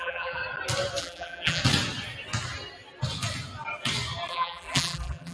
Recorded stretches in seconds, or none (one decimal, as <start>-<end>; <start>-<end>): 0.4-1.0; 1.6-4.3